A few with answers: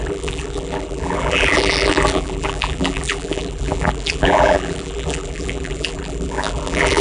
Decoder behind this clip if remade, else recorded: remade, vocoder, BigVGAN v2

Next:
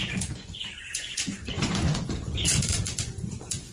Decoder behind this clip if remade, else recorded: remade, vocoder, Vocos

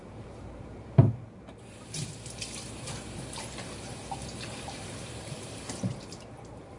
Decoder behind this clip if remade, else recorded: remade, vocoder, BigVGAN v2